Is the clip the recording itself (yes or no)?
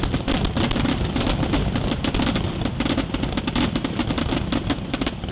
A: yes